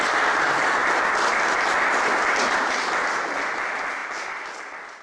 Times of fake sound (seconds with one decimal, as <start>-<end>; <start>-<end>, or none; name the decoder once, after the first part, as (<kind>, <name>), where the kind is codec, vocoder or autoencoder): none